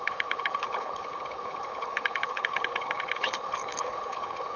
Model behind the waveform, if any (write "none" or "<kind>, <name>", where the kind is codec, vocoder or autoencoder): codec, HILCodec